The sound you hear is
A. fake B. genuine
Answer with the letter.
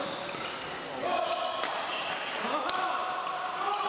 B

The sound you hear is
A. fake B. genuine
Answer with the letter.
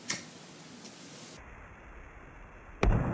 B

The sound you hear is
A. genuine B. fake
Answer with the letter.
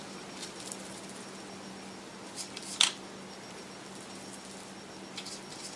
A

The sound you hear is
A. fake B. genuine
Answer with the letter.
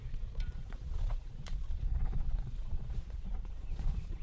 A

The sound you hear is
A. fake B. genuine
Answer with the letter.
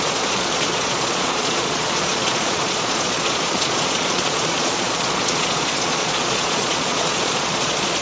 A